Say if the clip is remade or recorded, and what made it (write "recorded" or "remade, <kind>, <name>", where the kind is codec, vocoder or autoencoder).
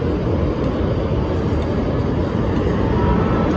recorded